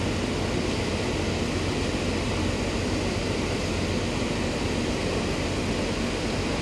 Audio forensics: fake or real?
real